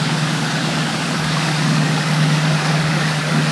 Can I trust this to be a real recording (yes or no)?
no